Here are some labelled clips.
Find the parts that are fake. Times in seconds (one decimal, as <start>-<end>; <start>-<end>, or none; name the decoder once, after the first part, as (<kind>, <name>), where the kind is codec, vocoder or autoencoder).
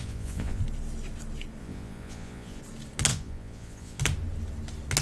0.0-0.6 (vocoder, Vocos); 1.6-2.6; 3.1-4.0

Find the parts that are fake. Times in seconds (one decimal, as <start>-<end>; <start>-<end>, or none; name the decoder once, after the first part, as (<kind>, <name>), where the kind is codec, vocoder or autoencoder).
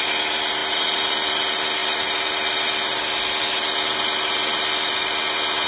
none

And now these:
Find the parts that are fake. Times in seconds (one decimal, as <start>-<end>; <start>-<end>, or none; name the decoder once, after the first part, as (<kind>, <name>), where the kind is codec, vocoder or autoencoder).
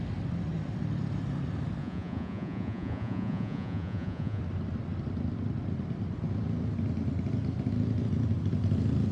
1.8-4.4 (vocoder, Vocos)